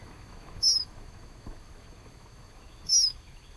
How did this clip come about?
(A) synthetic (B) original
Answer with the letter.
A